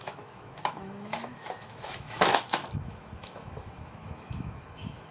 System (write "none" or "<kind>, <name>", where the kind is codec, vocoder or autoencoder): autoencoder, DAC-VAE